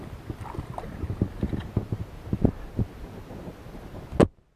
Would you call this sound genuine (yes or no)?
yes